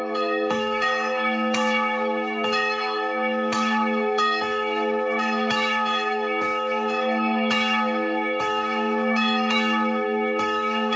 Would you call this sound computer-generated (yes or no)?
yes